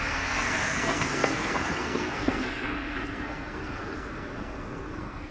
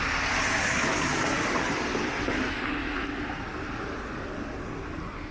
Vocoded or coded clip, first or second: first